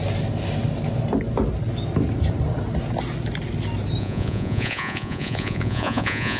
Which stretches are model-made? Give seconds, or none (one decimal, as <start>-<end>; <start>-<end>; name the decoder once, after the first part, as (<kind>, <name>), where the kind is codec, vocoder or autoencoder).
4.0-6.4 (vocoder, Vocos)